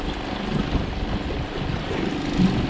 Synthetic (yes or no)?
no